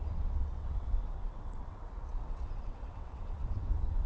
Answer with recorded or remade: remade